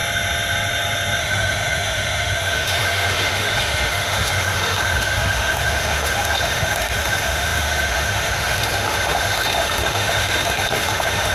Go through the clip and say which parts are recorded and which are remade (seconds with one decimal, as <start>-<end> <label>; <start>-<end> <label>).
0.0-1.2 recorded; 1.2-11.3 remade